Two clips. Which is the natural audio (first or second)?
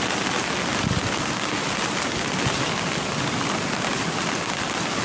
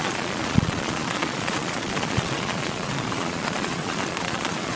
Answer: first